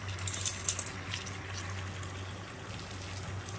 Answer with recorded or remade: recorded